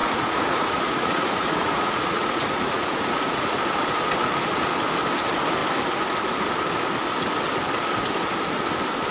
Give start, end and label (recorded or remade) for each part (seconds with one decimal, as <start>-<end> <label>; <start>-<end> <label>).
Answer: 0.0-3.6 remade; 3.6-9.1 recorded

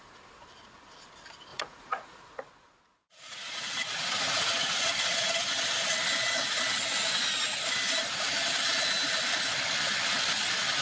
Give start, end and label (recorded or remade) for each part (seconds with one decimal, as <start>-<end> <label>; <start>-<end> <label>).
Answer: 0.0-1.5 recorded; 1.5-2.5 remade; 2.5-2.9 recorded; 2.9-5.3 remade; 5.3-10.8 recorded